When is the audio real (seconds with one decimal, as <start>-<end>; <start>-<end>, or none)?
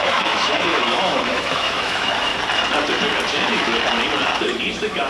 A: 2.3-3.3; 3.7-4.4